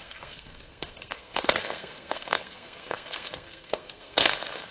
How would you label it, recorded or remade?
remade